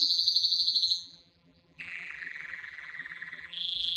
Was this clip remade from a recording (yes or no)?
yes